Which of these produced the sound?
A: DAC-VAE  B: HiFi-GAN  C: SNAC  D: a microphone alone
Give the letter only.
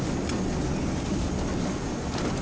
D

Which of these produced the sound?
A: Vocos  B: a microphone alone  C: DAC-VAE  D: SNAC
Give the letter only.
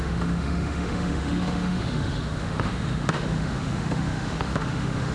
C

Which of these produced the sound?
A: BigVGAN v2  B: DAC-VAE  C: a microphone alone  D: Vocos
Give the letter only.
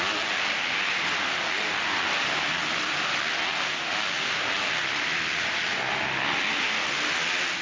C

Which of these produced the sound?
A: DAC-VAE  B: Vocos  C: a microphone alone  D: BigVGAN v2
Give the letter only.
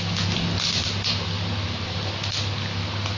C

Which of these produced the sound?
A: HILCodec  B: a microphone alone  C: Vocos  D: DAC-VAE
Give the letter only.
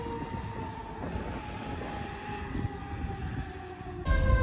B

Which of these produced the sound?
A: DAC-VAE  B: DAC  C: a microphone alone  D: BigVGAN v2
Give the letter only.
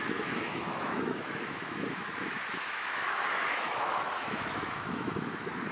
A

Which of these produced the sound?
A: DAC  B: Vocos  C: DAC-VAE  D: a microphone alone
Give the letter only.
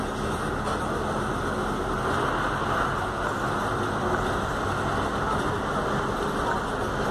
D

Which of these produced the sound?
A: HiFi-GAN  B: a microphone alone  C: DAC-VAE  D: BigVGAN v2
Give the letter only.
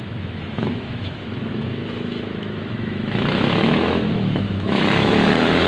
C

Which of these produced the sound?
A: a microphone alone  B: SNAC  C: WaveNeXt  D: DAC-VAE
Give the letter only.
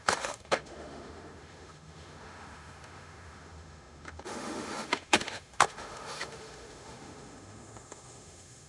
D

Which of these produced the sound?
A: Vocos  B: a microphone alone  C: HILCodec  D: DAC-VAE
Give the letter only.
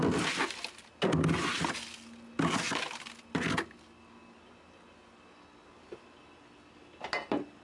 B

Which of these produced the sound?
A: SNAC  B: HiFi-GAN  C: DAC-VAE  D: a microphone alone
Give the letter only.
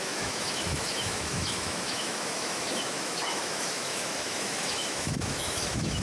C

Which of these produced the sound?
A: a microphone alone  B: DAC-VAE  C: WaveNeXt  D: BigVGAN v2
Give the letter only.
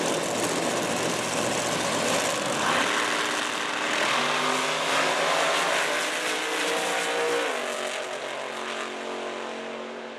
A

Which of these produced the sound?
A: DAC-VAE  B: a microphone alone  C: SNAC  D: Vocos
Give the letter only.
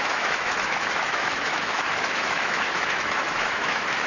A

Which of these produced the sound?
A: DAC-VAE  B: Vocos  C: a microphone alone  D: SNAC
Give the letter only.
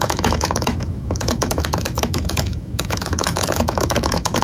A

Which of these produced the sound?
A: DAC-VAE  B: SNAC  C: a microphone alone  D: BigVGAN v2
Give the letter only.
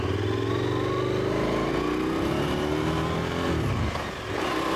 C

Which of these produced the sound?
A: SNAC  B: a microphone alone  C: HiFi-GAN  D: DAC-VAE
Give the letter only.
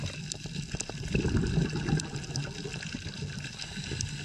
B